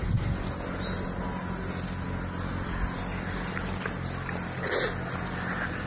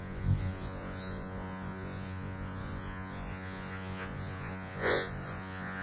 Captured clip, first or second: first